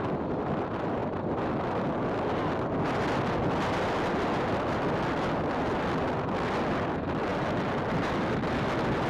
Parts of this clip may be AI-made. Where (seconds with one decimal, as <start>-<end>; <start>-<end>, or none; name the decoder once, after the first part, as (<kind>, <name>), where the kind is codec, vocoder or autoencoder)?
none